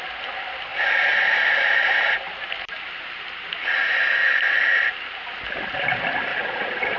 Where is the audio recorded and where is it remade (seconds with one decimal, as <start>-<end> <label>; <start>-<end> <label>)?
0.0-6.3 recorded; 6.3-7.0 remade